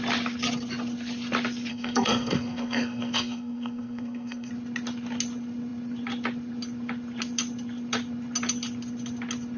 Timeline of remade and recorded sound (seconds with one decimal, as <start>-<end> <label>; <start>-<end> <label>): 0.0-1.7 recorded; 1.7-4.5 remade; 4.5-9.6 recorded